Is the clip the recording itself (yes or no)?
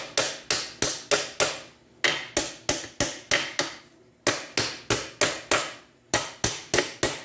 yes